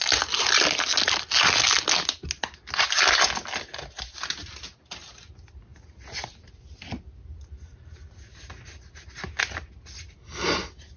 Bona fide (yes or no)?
yes